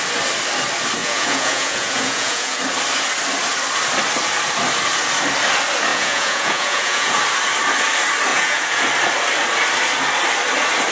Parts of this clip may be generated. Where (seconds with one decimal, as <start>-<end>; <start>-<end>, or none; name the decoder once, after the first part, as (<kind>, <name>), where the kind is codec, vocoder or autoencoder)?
1.0-2.6 (vocoder, Vocos); 5.9-7.1; 8.3-8.8